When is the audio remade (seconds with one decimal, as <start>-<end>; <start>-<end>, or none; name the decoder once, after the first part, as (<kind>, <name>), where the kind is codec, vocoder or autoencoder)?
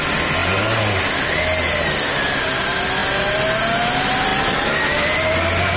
4.3-5.3 (vocoder, BigVGAN v2)